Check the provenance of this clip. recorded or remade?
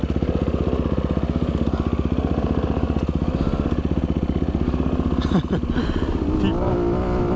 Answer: recorded